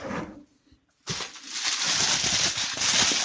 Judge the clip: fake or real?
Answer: real